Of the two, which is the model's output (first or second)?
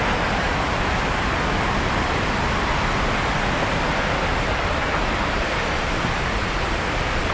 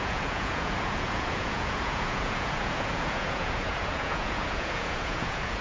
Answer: second